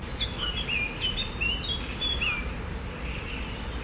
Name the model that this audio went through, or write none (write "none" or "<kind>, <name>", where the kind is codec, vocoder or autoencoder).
none